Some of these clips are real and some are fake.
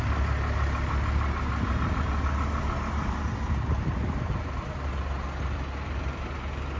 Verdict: real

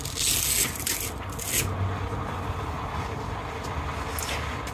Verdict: real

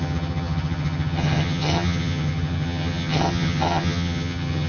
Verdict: fake